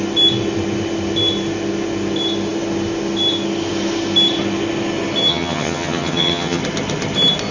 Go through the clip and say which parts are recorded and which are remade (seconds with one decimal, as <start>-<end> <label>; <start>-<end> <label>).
0.0-5.3 recorded; 5.3-6.6 remade; 6.6-7.5 recorded